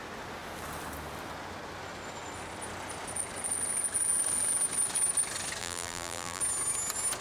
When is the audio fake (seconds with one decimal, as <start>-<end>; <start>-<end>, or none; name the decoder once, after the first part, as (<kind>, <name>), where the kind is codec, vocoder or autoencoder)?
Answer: 5.6-6.4 (vocoder, BigVGAN v2)